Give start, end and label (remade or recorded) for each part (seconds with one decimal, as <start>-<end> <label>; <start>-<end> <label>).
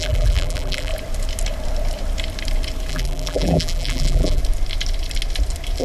0.0-0.9 remade; 0.9-2.9 recorded; 2.9-4.4 remade; 4.4-5.8 recorded